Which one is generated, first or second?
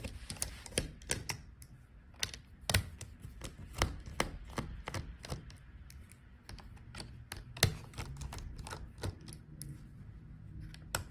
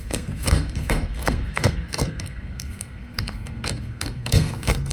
second